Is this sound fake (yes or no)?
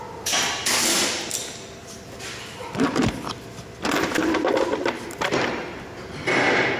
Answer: yes